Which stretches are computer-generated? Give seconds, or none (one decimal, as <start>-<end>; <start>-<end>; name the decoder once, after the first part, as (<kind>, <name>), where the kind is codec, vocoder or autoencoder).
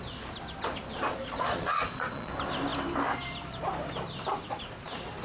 1.2-2.3 (vocoder, Vocos)